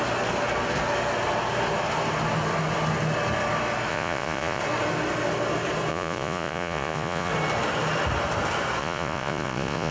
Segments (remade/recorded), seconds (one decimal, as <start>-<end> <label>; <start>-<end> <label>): 0.0-3.9 recorded; 3.9-4.6 remade; 4.6-5.9 recorded; 5.9-7.3 remade; 7.3-8.8 recorded; 8.8-9.9 remade